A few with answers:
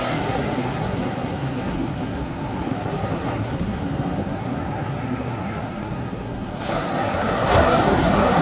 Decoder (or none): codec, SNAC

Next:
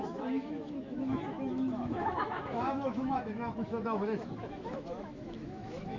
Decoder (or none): autoencoder, DAC-VAE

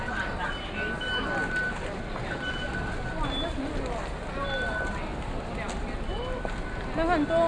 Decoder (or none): none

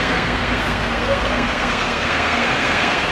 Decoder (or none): codec, SNAC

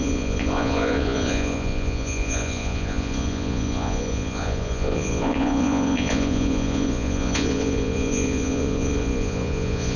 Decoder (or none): vocoder, Vocos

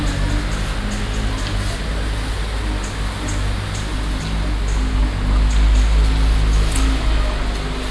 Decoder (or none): none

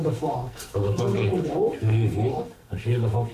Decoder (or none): codec, SNAC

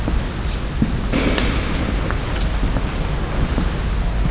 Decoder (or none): none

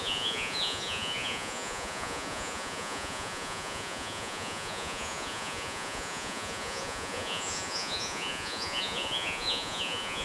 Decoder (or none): vocoder, Vocos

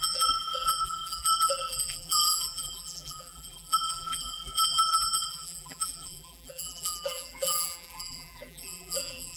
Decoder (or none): vocoder, BigVGAN v2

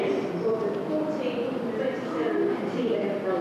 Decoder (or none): none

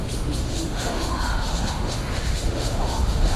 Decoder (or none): autoencoder, DAC-VAE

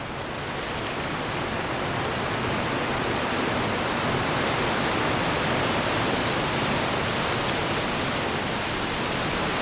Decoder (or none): none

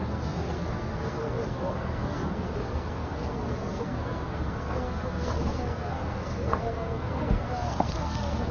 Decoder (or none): codec, SNAC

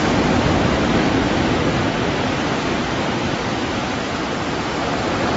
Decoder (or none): vocoder, BigVGAN v2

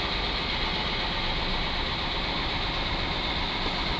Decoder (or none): none